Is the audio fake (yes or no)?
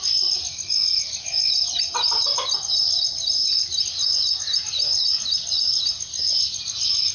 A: no